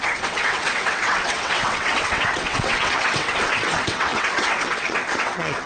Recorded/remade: remade